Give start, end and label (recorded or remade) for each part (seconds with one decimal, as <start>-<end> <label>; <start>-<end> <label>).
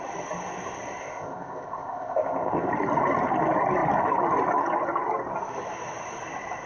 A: 0.0-1.0 recorded; 1.0-2.7 remade; 2.7-6.7 recorded